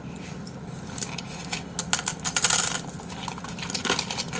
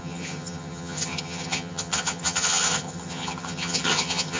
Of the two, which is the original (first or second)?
first